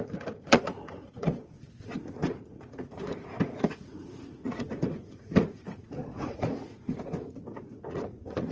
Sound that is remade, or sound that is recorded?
remade